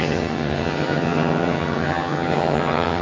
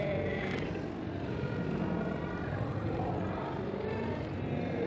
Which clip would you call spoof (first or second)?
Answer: first